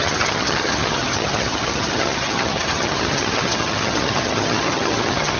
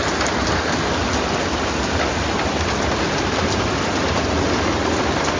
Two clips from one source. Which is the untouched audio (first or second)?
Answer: second